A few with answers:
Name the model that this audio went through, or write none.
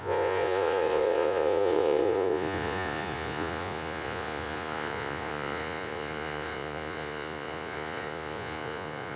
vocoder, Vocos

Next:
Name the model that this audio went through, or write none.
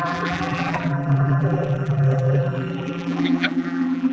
vocoder, BigVGAN v2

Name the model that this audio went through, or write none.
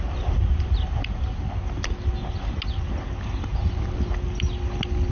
none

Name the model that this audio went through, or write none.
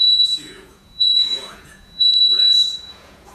vocoder, Vocos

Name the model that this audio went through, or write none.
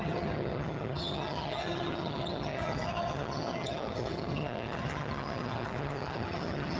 vocoder, HiFi-GAN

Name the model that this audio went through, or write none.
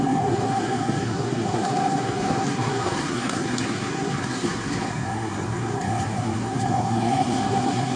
codec, SNAC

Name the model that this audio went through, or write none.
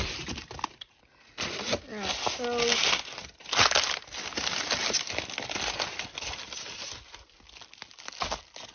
none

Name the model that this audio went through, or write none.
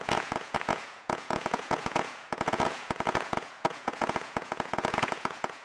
vocoder, Vocos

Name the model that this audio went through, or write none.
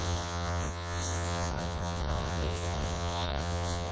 vocoder, WaveNeXt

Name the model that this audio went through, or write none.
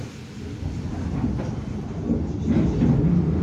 none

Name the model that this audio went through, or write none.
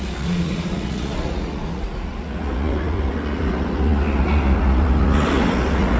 vocoder, Vocos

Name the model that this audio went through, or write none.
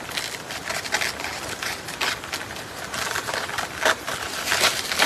none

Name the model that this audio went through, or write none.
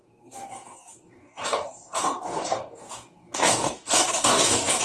codec, DAC